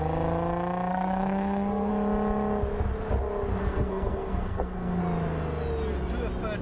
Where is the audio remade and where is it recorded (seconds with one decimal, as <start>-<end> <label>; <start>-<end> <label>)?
0.0-0.9 recorded; 0.9-1.9 remade; 1.9-3.6 recorded; 3.6-5.0 remade; 5.0-6.6 recorded